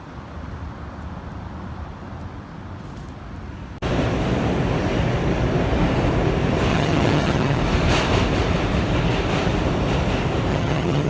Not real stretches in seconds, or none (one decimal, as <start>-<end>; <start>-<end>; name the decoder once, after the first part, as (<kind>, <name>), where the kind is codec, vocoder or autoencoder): 6.7-7.6 (vocoder, HiFi-GAN); 10.5-11.1